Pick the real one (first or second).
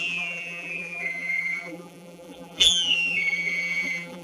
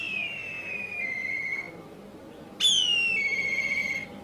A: second